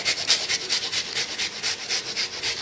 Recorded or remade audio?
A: recorded